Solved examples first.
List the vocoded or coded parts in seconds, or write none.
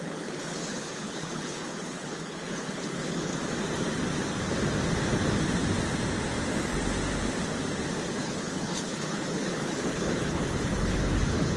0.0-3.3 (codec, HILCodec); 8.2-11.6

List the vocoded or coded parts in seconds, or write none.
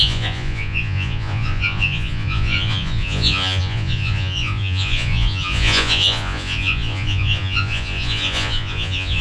0.0-9.2 (vocoder, Vocos)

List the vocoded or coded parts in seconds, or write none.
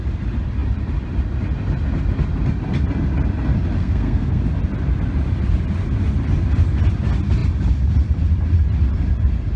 3.8-4.4 (codec, SNAC)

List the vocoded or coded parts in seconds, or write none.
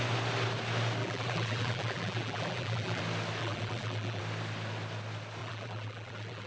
1.0-3.0 (vocoder, BigVGAN v2); 3.4-4.2; 5.4-6.5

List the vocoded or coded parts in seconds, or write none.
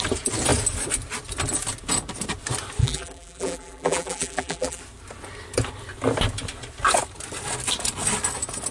2.8-4.8 (vocoder, BigVGAN v2)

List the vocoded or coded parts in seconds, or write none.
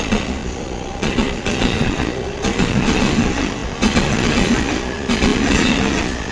0.0-6.3 (vocoder, Vocos)